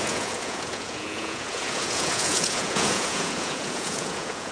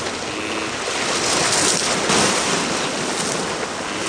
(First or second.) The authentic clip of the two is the second